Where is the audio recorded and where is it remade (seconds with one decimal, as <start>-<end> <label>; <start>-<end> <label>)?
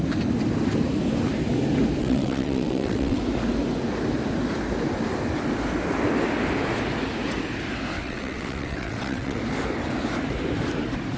0.0-2.0 recorded; 2.0-3.2 remade; 3.2-8.0 recorded; 8.0-9.4 remade; 9.4-11.2 recorded